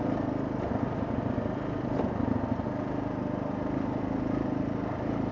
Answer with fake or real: real